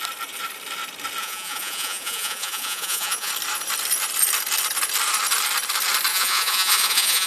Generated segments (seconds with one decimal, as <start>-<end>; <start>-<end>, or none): 1.2-3.3; 6.1-7.3

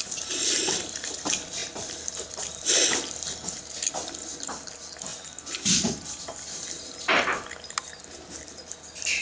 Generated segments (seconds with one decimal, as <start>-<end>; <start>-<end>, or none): none

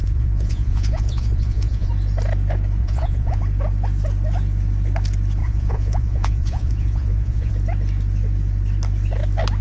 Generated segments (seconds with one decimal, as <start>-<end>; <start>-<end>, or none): 0.0-1.9; 2.8-3.4; 5.4-7.5